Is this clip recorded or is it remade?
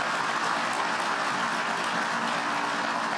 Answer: recorded